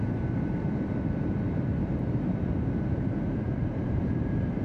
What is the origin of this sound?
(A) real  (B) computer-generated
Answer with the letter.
B